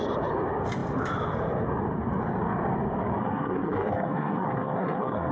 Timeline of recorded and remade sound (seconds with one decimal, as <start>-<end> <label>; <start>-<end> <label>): 0.0-3.2 recorded; 3.2-5.3 remade